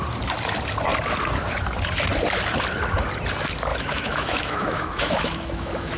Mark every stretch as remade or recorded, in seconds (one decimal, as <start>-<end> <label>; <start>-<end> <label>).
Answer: 0.0-3.7 recorded; 3.7-6.0 remade